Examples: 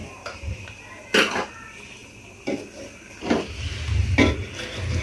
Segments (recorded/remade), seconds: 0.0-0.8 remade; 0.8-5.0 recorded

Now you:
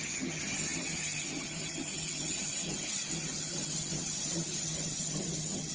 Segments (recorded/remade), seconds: 0.0-5.7 remade

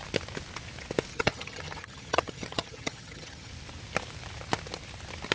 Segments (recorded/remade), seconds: 0.0-1.1 recorded; 1.1-3.5 remade; 3.5-5.3 recorded

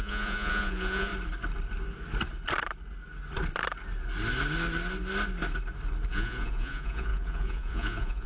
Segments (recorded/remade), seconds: 0.0-1.1 remade; 1.1-6.1 recorded; 6.1-8.3 remade

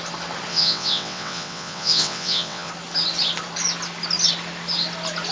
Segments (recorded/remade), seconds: 0.0-0.5 recorded; 0.5-2.7 remade; 2.7-5.3 recorded

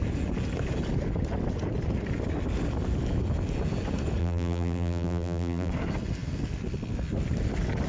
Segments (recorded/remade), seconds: 0.0-4.2 recorded; 4.2-5.7 remade; 5.7-7.9 recorded

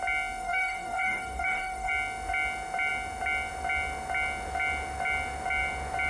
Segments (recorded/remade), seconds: 0.0-0.4 recorded; 0.4-1.9 remade; 1.9-6.1 recorded